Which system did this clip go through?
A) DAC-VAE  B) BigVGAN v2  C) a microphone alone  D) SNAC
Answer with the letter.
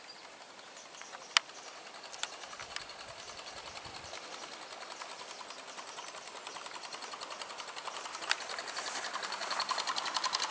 C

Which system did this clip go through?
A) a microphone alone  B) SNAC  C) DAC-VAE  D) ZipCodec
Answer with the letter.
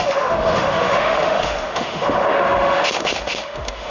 C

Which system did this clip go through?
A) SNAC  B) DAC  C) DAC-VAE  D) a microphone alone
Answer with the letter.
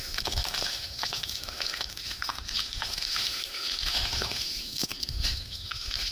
C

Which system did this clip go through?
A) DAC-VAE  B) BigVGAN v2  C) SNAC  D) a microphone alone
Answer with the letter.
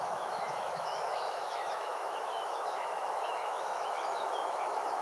A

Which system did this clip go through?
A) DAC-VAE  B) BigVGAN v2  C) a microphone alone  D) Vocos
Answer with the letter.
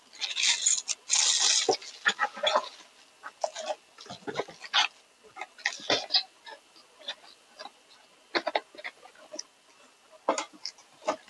C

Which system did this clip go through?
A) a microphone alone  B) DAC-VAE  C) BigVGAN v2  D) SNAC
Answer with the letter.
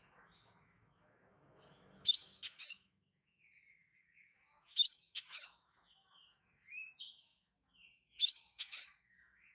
B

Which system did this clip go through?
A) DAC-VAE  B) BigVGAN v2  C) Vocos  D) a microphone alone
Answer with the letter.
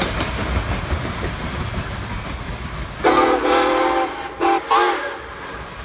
D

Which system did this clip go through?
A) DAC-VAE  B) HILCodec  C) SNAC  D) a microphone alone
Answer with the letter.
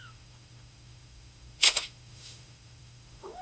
A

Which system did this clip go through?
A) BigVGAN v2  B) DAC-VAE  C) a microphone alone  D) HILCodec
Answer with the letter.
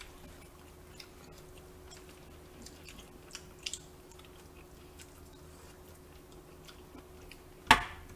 C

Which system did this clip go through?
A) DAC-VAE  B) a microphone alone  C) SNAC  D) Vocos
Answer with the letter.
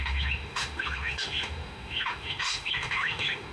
A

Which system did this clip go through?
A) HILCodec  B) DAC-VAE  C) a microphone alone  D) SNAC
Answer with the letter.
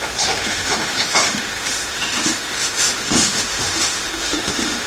B